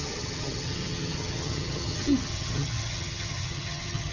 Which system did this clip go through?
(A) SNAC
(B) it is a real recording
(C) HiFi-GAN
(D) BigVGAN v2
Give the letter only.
C